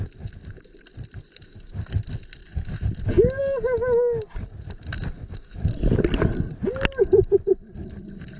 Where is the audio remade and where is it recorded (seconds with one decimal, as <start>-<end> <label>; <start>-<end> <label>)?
0.0-8.4 recorded